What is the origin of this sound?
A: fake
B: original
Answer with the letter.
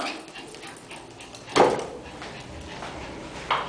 B